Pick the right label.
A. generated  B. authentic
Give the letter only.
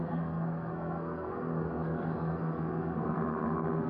A